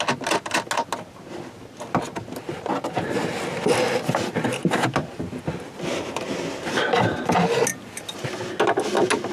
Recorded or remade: recorded